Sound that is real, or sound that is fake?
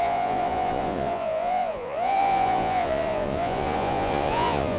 fake